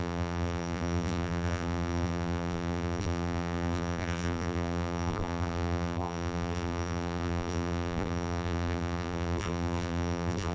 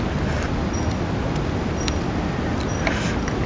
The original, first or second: second